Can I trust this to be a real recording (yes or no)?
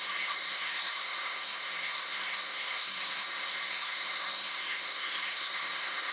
no